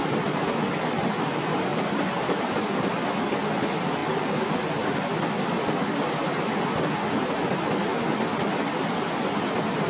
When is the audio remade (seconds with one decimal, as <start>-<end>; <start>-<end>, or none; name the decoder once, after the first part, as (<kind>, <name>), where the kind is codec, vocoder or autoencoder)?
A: 1.7-2.9 (vocoder, BigVGAN v2)